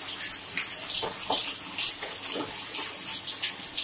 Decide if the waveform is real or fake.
real